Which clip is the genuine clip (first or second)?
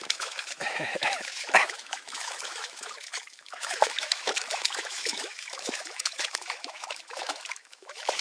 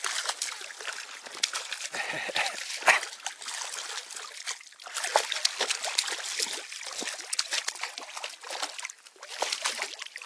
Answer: second